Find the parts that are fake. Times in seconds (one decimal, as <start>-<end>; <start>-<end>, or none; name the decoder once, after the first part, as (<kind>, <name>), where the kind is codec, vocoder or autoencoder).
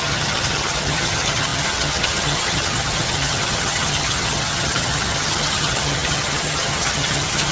0.0-7.5 (vocoder, HiFi-GAN)